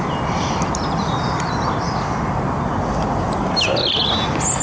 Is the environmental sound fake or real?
real